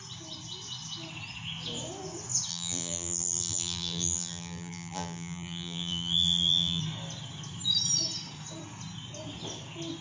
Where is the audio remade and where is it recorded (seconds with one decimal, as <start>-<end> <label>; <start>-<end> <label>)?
0.0-2.5 recorded; 2.5-6.8 remade; 6.8-10.0 recorded